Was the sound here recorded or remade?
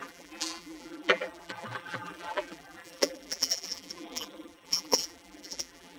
remade